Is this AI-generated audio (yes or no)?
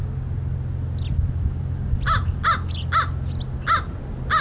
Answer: no